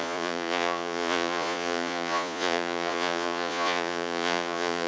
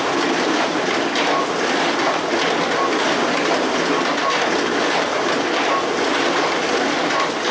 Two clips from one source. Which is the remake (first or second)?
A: first